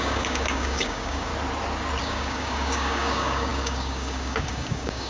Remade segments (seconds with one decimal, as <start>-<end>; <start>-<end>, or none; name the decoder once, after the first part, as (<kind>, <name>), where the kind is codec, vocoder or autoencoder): 0.0-1.3 (codec, DAC); 2.0-5.1